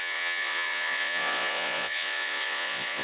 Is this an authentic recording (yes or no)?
no